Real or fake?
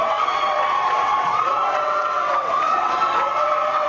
fake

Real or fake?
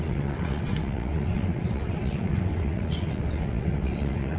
fake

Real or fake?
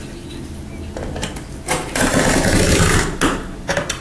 real